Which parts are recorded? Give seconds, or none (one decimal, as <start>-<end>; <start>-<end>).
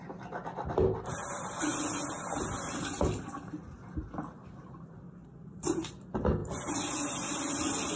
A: 0.0-1.7; 3.5-5.2; 5.9-6.4; 7.4-8.0